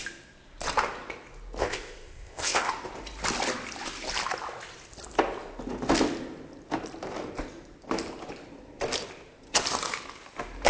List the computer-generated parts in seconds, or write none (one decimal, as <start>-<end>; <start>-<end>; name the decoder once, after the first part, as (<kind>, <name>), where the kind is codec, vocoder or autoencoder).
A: 1.6-2.7 (codec, ZipCodec)